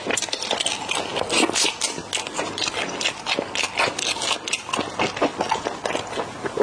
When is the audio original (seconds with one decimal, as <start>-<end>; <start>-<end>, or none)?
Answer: 0.0-6.6